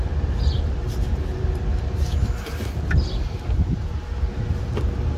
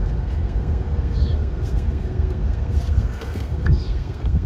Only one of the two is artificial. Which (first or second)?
second